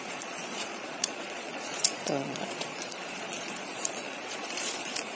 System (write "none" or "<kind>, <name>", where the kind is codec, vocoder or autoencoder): vocoder, Vocos